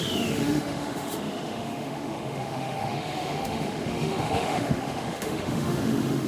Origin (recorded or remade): remade